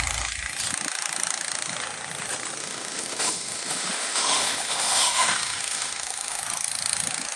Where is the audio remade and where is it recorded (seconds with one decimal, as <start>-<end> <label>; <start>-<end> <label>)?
0.0-2.6 recorded; 2.6-6.4 remade; 6.4-7.4 recorded